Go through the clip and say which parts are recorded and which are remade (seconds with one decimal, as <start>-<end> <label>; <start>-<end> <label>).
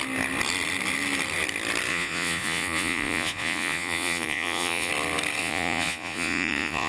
0.0-1.9 recorded; 1.9-4.9 remade; 4.9-5.4 recorded; 5.4-6.9 remade